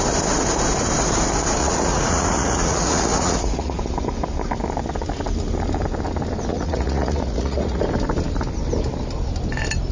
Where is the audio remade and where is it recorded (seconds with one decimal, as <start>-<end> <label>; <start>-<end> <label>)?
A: 0.0-1.6 recorded; 1.6-3.8 remade; 3.8-6.5 recorded; 6.5-7.8 remade; 7.8-9.9 recorded